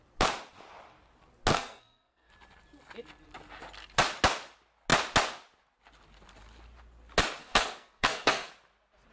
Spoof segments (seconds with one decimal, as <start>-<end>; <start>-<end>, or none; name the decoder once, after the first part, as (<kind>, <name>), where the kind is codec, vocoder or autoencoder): 1.5-2.3 (codec, SNAC); 7.4-8.5